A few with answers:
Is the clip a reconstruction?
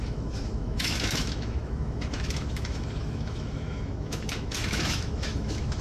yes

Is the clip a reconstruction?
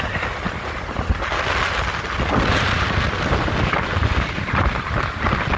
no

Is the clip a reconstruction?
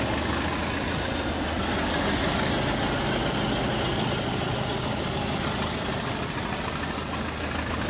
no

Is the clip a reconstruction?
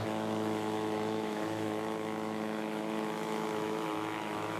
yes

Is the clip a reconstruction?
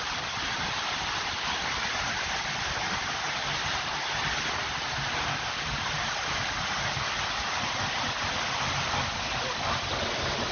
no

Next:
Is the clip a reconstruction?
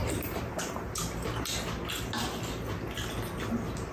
no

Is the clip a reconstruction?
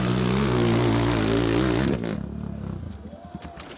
no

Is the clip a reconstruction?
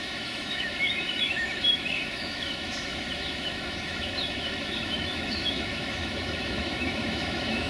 yes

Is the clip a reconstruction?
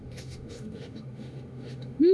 yes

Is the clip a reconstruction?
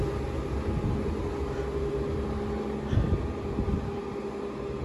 no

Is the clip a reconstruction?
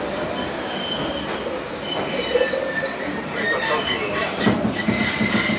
no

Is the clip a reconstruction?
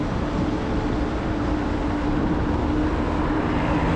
no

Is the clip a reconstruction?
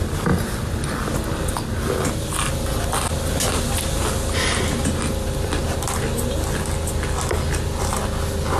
no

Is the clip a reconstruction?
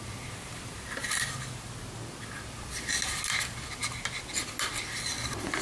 no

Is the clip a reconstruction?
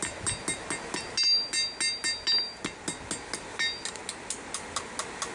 no